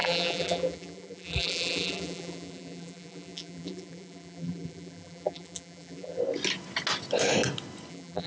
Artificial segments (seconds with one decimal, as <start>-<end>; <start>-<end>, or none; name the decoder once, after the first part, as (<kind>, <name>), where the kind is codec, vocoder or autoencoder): 0.0-6.2 (vocoder, BigVGAN v2); 7.9-8.3